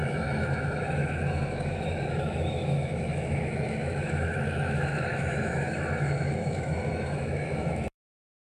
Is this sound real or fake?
fake